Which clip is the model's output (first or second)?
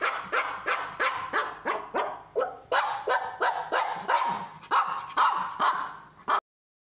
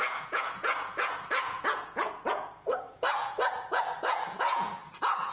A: second